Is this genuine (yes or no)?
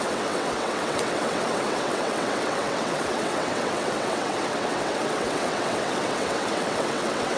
no